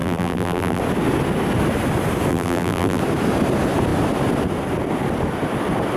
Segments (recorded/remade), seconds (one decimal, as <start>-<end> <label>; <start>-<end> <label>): 0.0-0.8 remade; 0.8-2.3 recorded; 2.3-3.0 remade; 3.0-6.0 recorded